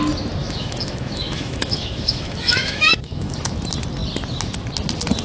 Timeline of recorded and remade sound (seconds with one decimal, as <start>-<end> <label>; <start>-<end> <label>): 0.0-0.4 recorded; 0.4-3.5 remade; 3.5-5.2 recorded